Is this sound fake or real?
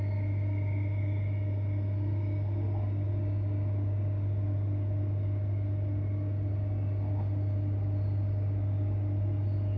real